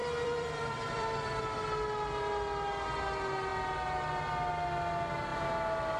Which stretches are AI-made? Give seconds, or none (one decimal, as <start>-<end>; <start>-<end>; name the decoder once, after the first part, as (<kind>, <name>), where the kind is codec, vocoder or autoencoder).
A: 0.0-1.4 (vocoder, BigVGAN v2); 5.3-6.0